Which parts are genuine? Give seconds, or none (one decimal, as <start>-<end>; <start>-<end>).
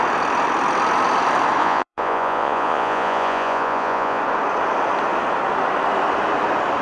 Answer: 0.0-1.6; 4.2-6.8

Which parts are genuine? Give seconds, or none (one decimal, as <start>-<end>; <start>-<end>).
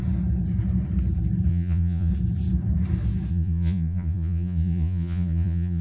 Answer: 0.0-1.5; 2.1-3.3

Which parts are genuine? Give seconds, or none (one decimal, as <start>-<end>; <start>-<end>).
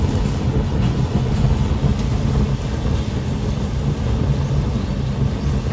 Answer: 0.0-0.7; 1.5-5.7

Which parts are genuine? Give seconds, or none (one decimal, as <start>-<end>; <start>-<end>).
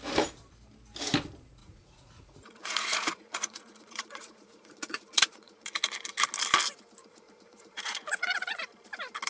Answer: 0.0-1.6; 5.9-7.0; 8.6-9.3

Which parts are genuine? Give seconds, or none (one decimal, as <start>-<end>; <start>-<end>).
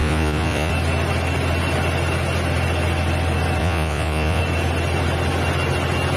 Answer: 0.7-3.6; 4.4-6.2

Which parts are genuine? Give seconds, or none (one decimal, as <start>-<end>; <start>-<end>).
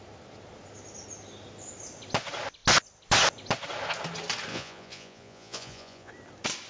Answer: 0.0-4.5; 6.1-6.7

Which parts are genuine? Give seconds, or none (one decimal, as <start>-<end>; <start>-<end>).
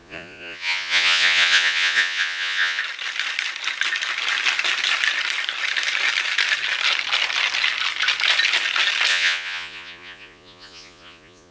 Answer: 2.8-9.1